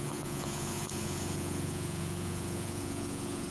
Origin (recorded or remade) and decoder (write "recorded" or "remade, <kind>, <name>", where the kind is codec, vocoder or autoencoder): remade, vocoder, Vocos